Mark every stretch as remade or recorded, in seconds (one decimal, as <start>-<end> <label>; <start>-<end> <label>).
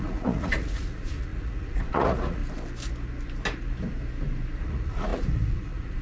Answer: 0.0-2.4 remade; 2.4-4.6 recorded; 4.6-6.0 remade